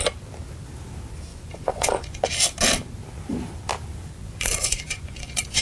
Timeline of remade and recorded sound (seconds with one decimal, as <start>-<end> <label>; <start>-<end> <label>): 0.0-1.3 recorded; 1.3-2.3 remade; 2.3-4.2 recorded; 4.2-5.6 remade